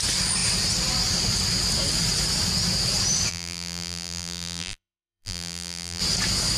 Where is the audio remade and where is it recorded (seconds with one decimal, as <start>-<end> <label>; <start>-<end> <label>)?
0.0-3.3 recorded; 3.3-6.0 remade; 6.0-6.6 recorded